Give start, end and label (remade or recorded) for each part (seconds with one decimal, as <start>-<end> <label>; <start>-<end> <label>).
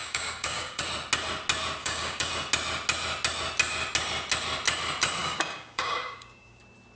0.0-0.8 remade; 0.8-1.8 recorded; 1.8-2.3 remade; 2.3-5.2 recorded; 5.2-6.6 remade; 6.6-7.0 recorded